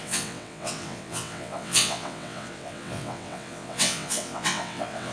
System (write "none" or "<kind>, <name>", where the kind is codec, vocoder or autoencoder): vocoder, WaveNeXt